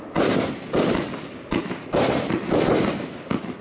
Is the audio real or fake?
real